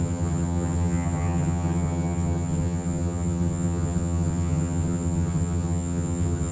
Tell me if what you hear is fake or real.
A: fake